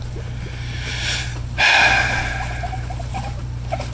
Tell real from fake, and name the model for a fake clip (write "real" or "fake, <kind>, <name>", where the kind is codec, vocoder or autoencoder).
real